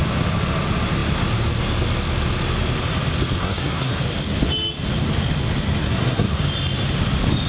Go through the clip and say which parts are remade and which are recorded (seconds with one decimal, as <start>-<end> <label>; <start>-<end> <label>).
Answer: 0.0-3.4 recorded; 3.4-4.0 remade; 4.0-5.8 recorded; 5.8-6.4 remade; 6.4-7.5 recorded